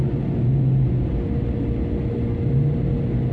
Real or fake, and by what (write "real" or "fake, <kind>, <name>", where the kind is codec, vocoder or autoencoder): real